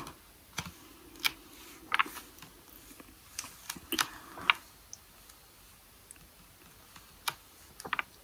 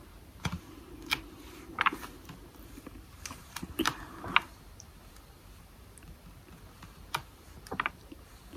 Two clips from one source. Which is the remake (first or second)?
second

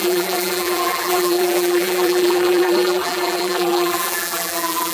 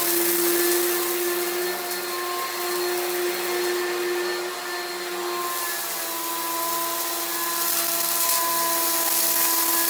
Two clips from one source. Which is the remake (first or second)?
first